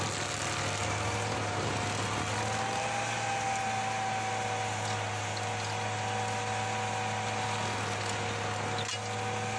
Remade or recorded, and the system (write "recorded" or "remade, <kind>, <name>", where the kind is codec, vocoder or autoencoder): recorded